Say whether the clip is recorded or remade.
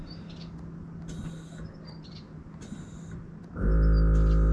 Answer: recorded